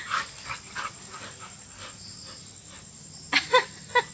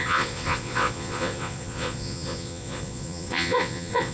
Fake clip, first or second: second